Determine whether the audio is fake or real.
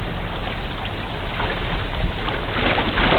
real